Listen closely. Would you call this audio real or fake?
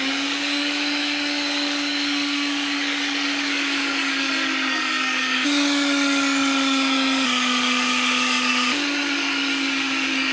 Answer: fake